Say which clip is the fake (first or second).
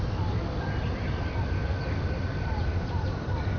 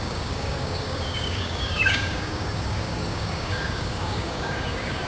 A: second